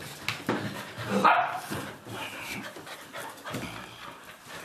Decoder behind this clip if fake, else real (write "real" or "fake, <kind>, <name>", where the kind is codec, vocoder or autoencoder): real